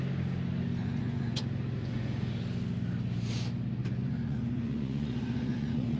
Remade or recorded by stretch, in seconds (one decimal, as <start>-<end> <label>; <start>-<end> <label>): 0.0-0.8 recorded; 0.8-1.4 remade; 1.4-1.8 recorded; 1.8-2.3 remade; 2.3-3.8 recorded; 3.8-6.0 remade